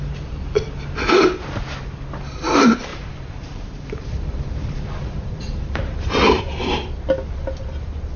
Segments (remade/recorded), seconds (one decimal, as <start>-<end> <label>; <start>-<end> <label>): 0.0-2.9 recorded; 2.9-6.4 remade; 6.4-8.2 recorded